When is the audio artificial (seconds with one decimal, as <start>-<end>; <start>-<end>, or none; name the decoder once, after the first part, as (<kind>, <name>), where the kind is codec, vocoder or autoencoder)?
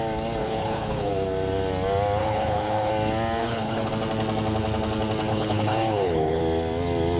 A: 0.4-1.1 (codec, HILCodec); 2.2-2.9; 3.4-3.9; 5.3-6.4